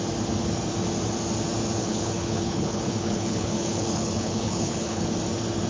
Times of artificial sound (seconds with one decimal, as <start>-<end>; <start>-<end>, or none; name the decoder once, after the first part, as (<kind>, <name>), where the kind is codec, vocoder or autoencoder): 1.8-5.1 (codec, HILCodec)